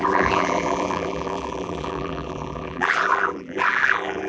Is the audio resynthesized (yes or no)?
yes